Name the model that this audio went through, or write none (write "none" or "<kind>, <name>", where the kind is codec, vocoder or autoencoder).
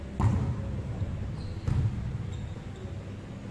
none